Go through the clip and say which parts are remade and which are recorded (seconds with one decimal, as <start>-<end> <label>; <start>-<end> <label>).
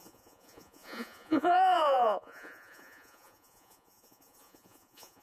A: 0.0-5.2 remade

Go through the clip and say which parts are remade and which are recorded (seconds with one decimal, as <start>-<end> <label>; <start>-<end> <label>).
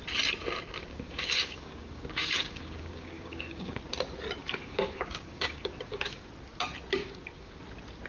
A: 0.0-0.9 recorded; 0.9-3.8 remade; 3.8-4.4 recorded; 4.4-6.3 remade; 6.3-7.0 recorded; 7.0-7.6 remade; 7.6-8.1 recorded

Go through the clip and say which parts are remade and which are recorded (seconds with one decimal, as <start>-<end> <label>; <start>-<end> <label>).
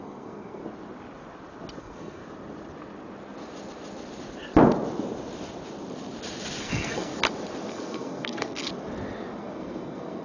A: 0.0-0.6 remade; 0.6-1.8 recorded; 1.8-2.2 remade; 2.2-6.6 recorded; 6.6-7.1 remade; 7.1-7.7 recorded; 7.7-8.7 remade; 8.7-9.4 recorded; 9.4-10.2 remade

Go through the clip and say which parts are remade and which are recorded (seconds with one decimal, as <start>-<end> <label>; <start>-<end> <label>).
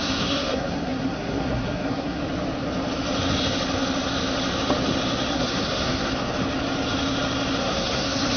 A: 0.0-2.2 remade; 2.2-5.3 recorded; 5.3-6.1 remade; 6.1-7.6 recorded; 7.6-8.4 remade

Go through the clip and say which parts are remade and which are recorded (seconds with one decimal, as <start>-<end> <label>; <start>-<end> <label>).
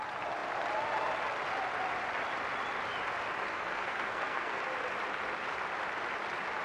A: 0.0-3.5 recorded; 3.5-4.6 remade; 4.6-6.6 recorded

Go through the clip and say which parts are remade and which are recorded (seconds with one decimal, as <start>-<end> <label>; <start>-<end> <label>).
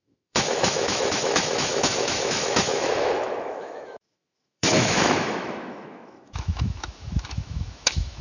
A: 0.0-8.2 remade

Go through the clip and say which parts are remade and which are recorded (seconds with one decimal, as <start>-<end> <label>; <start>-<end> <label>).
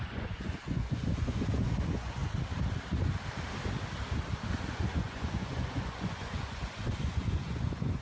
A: 0.0-2.2 remade; 2.2-4.7 recorded; 4.7-8.0 remade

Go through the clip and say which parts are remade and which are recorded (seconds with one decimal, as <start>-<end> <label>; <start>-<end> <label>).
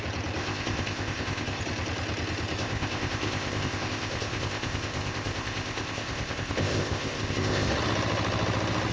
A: 0.0-0.4 recorded; 0.4-1.6 remade; 1.6-2.6 recorded; 2.6-7.7 remade; 7.7-8.9 recorded